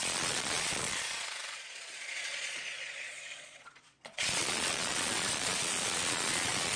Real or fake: fake